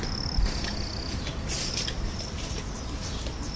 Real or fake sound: real